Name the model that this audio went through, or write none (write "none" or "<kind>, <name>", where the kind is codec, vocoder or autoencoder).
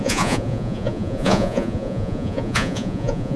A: vocoder, Vocos